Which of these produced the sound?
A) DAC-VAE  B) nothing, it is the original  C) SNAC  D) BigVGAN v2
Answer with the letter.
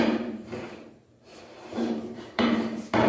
D